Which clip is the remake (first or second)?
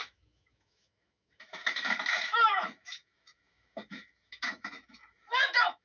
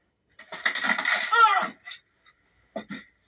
first